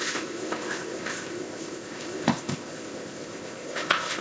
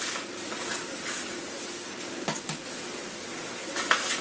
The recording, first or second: second